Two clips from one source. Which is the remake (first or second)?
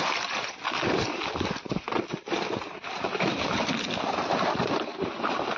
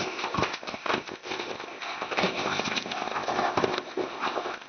second